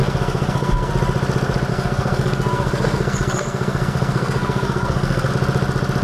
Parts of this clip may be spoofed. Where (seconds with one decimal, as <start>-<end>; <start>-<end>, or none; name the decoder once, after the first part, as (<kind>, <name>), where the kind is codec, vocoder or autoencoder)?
0.0-0.9 (codec, SNAC); 1.7-5.3